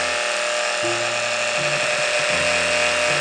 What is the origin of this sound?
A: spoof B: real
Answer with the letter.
B